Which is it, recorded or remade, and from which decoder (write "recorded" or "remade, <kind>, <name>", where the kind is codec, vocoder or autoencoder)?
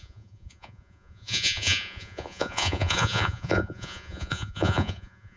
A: remade, vocoder, Vocos